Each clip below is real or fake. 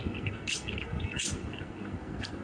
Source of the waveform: fake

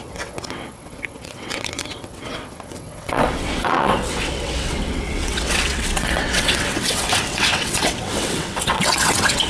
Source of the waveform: fake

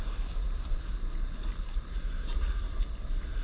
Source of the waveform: fake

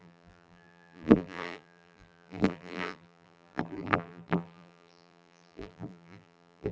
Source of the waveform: fake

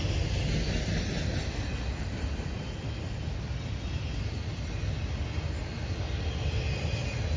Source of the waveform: real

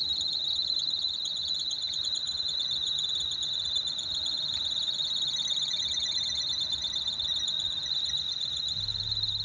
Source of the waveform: real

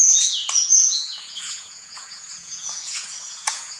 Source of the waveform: fake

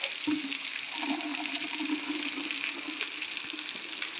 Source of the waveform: real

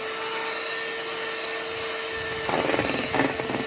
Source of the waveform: real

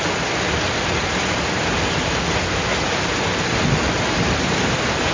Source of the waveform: fake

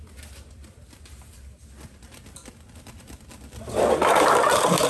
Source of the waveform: real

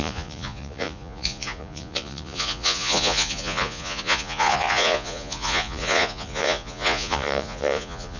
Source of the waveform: fake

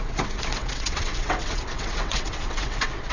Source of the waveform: fake